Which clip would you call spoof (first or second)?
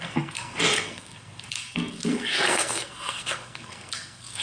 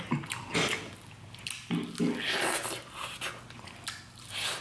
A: first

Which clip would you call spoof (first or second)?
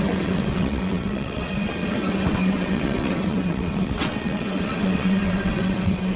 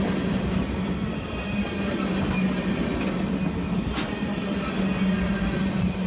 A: first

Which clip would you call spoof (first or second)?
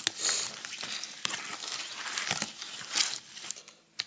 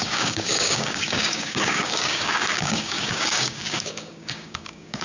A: second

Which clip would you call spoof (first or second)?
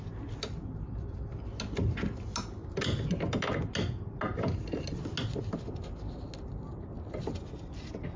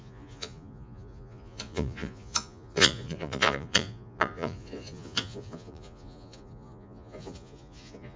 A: second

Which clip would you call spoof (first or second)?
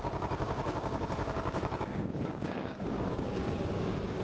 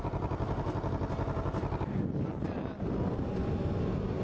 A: first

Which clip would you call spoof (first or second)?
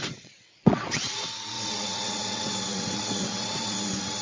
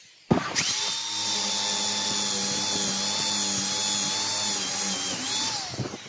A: first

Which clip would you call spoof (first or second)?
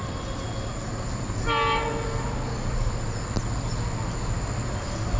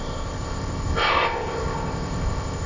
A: second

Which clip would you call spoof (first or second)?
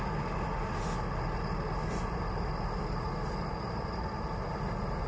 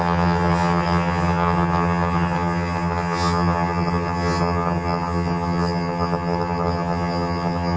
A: second